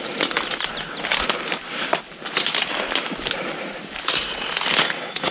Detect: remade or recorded recorded